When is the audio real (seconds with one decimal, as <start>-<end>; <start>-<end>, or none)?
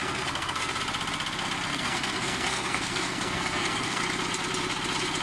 0.8-1.7; 4.0-5.2